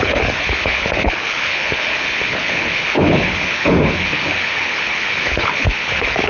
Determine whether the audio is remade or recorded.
remade